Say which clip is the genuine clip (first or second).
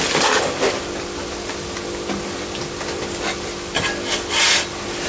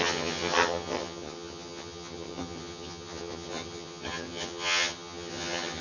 first